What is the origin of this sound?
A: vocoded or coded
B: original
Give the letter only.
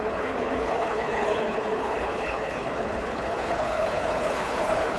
A